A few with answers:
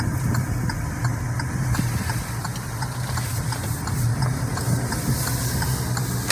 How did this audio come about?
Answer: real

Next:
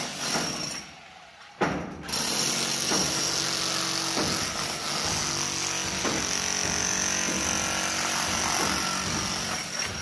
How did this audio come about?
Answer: real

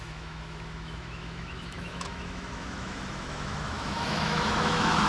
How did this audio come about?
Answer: fake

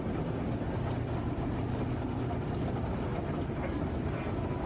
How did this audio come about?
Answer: real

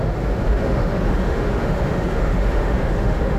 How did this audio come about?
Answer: fake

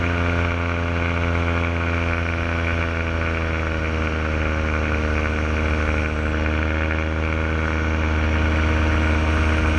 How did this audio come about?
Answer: real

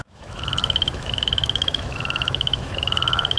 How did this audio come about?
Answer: fake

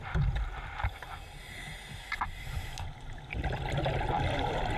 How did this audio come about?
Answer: real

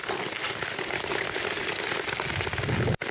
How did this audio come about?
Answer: real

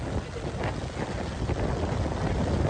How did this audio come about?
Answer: real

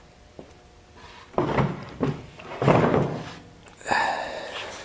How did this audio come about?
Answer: real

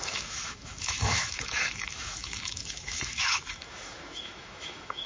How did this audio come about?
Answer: fake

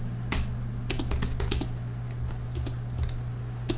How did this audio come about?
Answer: real